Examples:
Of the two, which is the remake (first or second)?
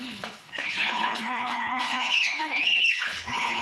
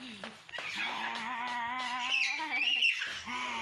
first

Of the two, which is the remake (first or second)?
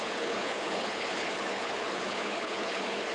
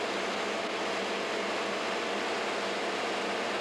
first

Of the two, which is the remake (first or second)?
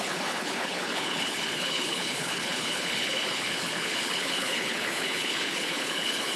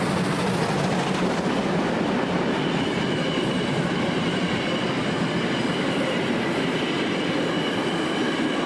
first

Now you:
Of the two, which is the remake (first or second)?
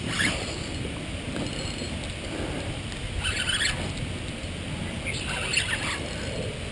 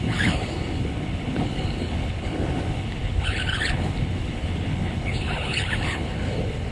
second